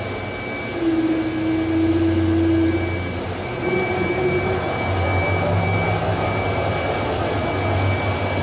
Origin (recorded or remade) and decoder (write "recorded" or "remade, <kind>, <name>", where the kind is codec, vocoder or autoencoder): recorded